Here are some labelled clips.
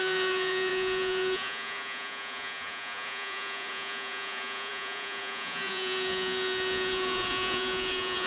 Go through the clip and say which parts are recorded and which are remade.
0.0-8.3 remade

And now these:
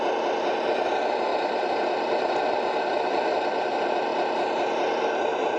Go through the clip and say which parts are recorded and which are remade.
0.0-5.6 recorded

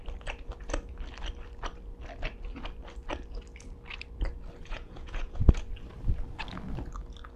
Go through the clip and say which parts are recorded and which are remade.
0.0-4.6 recorded; 4.6-5.4 remade; 5.4-7.4 recorded